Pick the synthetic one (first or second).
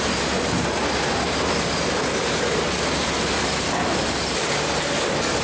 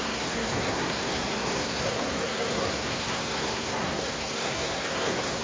second